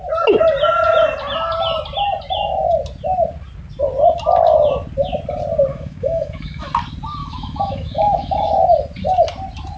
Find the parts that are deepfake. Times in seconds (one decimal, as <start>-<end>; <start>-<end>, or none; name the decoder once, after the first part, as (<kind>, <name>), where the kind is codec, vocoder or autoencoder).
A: 5.7-6.7 (autoencoder, DAC-VAE); 7.2-8.5